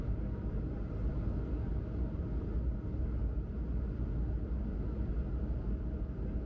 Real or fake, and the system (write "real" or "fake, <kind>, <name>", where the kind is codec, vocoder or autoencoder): real